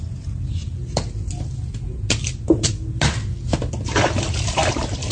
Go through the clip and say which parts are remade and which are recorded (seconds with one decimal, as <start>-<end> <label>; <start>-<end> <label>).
0.0-5.1 recorded